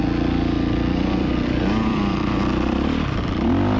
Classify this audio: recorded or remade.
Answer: remade